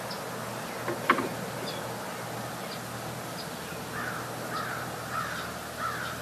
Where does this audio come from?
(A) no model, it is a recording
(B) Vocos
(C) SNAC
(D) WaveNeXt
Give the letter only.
A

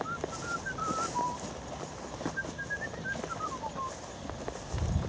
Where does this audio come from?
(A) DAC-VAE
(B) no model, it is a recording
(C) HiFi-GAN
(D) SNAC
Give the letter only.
B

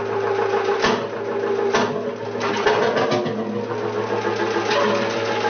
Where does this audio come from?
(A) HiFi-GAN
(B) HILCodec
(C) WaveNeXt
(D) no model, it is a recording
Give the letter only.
D